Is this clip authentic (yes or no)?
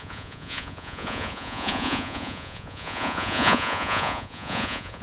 no